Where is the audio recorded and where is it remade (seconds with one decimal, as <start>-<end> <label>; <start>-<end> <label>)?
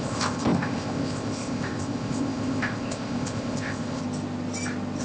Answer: 0.0-4.0 remade; 4.0-5.0 recorded